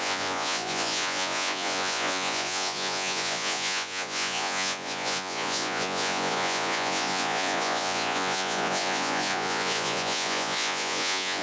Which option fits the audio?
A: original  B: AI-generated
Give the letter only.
B